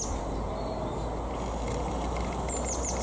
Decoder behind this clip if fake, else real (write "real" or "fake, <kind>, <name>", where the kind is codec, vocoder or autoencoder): real